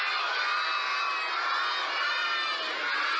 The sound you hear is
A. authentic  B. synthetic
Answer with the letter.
A